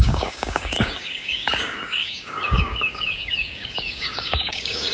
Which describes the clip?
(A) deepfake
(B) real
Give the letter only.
A